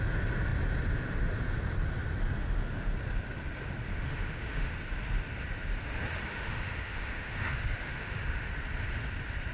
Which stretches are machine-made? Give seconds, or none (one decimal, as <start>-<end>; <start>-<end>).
2.4-2.9; 3.9-4.7; 6.3-8.5